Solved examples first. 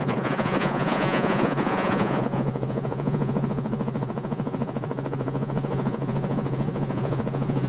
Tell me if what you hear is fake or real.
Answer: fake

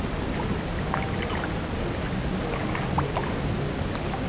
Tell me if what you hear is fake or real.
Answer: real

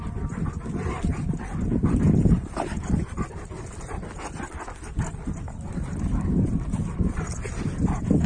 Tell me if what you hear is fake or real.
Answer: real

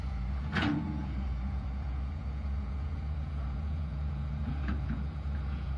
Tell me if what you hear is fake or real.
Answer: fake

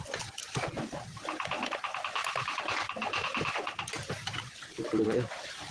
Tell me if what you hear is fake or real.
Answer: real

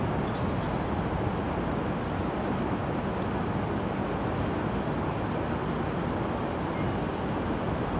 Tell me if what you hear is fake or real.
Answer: real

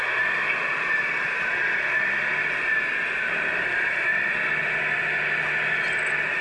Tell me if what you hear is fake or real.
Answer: real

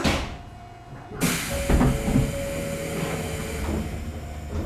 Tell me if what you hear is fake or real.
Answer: real